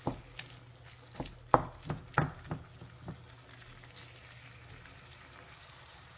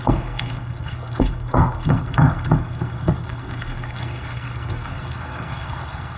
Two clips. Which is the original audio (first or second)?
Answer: first